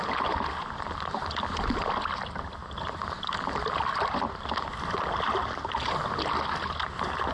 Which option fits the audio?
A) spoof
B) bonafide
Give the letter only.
B